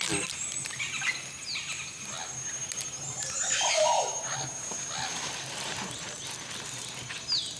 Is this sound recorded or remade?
recorded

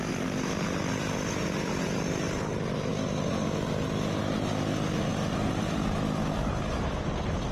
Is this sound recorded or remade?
recorded